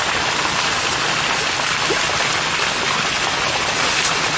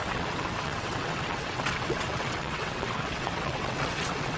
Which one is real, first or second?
first